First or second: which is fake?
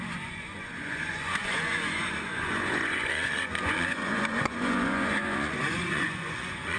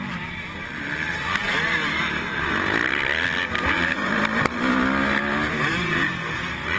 first